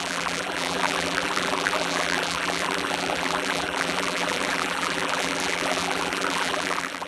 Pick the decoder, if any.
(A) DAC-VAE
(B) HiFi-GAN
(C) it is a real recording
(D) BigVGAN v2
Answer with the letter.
D